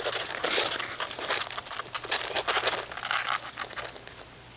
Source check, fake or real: real